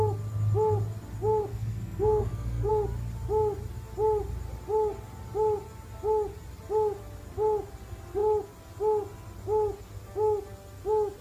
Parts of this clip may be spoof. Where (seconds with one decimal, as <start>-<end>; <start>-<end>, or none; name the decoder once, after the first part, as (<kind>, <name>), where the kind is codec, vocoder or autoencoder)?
1.5-2.7 (codec, SNAC)